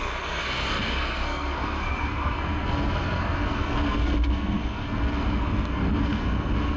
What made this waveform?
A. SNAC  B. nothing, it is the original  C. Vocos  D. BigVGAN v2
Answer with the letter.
A